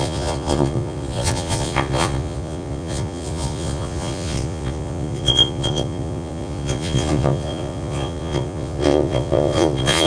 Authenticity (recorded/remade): remade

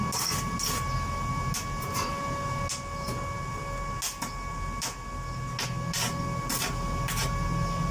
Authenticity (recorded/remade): recorded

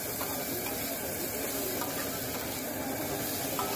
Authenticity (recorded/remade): recorded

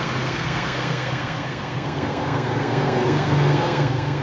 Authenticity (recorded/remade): remade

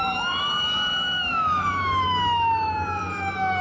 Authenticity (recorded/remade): remade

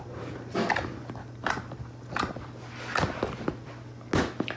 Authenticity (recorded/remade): recorded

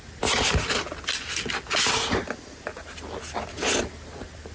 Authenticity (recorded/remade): recorded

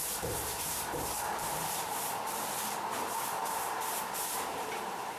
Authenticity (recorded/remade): remade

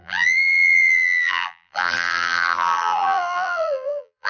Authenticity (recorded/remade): remade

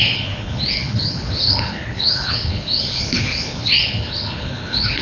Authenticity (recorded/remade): remade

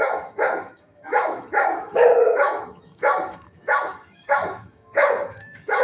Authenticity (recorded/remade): remade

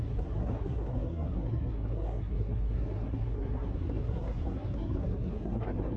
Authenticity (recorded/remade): remade